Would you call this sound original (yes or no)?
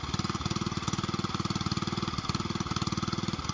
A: yes